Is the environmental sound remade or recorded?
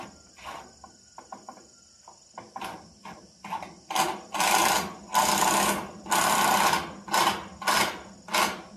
recorded